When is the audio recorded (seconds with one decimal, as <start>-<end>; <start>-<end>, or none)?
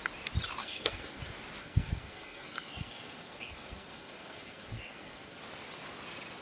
0.0-0.6; 1.2-1.6; 5.4-6.4